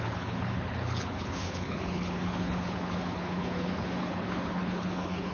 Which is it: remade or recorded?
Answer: remade